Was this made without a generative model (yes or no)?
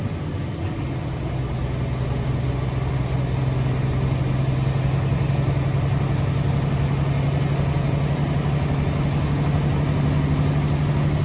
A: yes